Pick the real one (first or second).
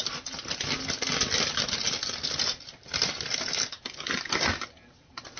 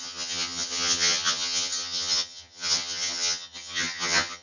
first